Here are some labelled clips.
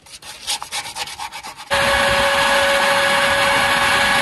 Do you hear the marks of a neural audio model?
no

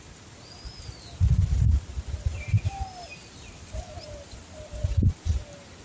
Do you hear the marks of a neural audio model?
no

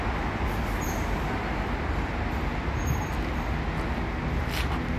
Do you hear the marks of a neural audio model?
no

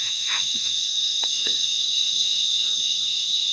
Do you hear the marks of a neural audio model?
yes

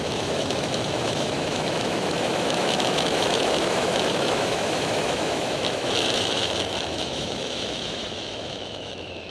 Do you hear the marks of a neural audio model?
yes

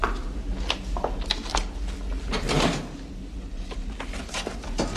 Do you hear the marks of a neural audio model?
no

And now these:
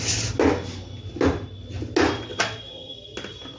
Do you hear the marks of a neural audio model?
no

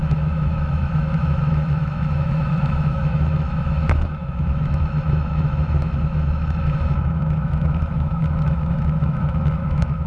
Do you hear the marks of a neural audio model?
yes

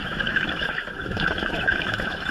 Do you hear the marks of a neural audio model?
yes